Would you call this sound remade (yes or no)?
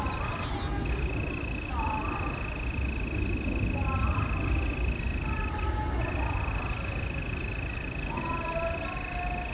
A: no